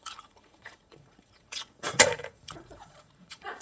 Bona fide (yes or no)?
no